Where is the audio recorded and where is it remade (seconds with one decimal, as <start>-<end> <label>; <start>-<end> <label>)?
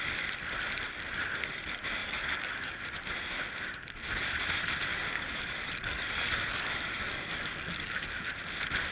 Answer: 0.0-2.0 recorded; 2.0-2.8 remade; 2.8-4.9 recorded; 4.9-8.3 remade; 8.3-8.9 recorded